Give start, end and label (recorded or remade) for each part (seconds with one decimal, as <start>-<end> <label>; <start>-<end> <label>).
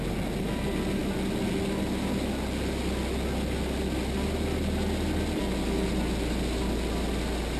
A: 0.0-7.6 recorded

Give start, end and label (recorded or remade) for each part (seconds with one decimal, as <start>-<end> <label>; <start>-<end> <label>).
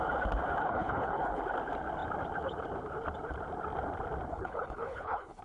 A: 0.0-0.6 recorded; 0.6-1.4 remade; 1.4-4.3 recorded; 4.3-5.4 remade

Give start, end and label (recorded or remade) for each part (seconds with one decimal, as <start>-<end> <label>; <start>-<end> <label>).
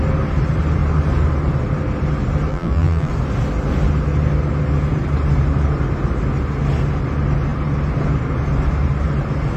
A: 0.0-2.5 recorded; 2.5-3.1 remade; 3.1-9.6 recorded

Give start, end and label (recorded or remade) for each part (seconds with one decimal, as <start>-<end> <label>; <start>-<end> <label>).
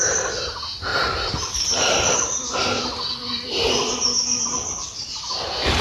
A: 0.0-5.8 recorded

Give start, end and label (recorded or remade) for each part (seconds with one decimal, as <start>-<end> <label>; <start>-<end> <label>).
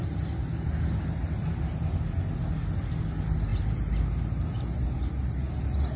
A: 0.0-6.0 recorded